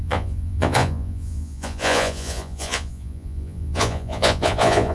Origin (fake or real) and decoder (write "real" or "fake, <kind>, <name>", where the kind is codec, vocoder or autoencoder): fake, vocoder, Vocos